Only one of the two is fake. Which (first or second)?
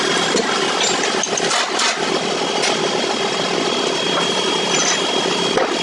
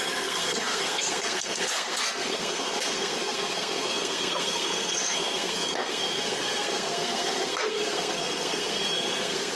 second